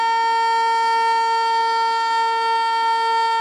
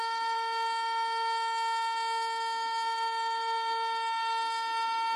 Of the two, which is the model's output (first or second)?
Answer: second